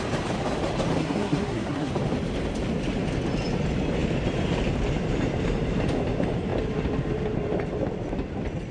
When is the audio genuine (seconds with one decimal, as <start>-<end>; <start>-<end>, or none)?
0.0-1.0; 1.9-8.7